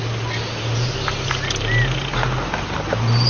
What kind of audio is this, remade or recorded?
recorded